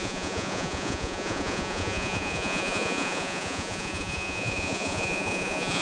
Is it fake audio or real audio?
fake